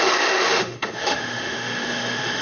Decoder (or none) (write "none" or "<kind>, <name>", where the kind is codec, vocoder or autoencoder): autoencoder, DAC-VAE